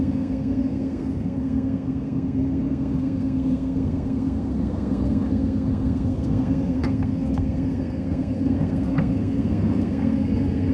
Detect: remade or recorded remade